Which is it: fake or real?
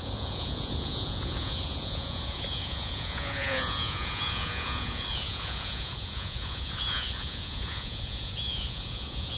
fake